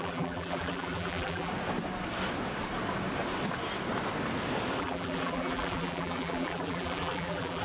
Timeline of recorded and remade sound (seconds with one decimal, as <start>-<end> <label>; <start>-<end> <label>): 0.0-1.5 remade; 1.5-4.8 recorded; 4.8-7.6 remade